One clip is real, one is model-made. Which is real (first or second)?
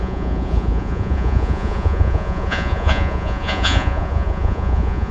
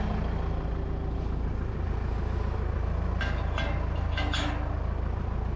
second